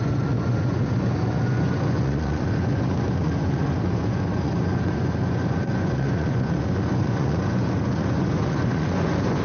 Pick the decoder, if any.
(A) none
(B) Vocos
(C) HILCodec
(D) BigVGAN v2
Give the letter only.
B